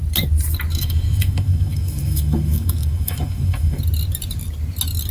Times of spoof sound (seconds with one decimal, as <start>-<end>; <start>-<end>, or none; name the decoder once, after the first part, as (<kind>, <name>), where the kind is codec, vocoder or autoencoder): 0.7-3.8 (autoencoder, DAC-VAE)